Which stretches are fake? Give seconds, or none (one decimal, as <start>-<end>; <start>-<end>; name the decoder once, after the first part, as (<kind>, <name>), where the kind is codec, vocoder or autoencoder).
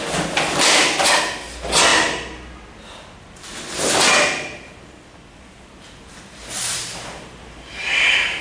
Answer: 6.4-8.4 (vocoder, BigVGAN v2)